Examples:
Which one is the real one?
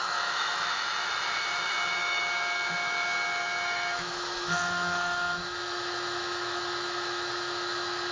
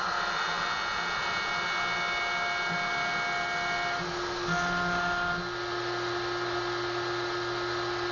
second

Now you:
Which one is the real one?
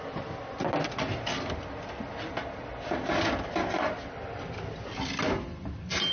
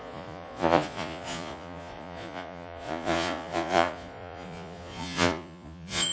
first